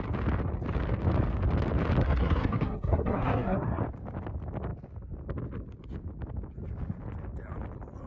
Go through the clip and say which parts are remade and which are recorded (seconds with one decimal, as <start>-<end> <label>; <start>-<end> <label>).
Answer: 0.0-2.0 recorded; 2.0-3.8 remade; 3.8-8.1 recorded